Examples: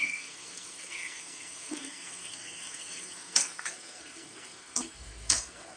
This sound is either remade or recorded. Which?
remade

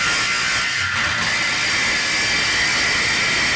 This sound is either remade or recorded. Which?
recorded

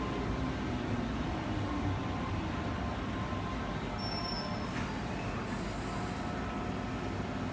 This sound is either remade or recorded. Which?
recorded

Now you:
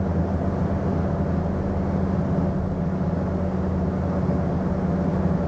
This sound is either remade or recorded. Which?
recorded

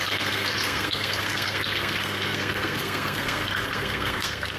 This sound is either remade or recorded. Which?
remade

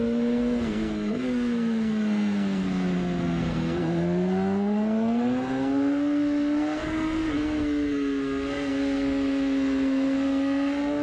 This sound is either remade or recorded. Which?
remade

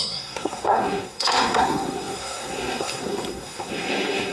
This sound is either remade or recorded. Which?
remade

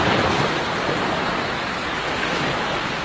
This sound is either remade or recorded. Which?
recorded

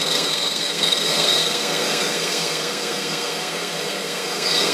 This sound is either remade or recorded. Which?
remade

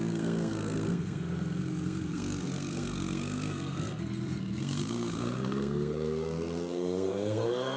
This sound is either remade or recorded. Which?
remade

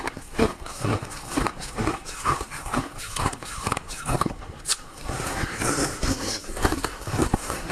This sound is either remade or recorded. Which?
remade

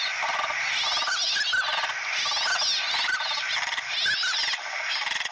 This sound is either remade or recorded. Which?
recorded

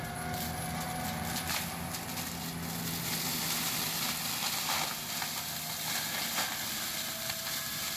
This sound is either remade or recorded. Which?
recorded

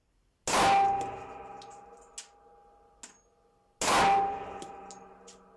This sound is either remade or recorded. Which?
recorded